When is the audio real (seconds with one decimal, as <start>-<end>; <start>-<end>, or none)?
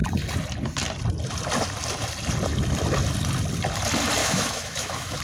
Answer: 0.0-4.2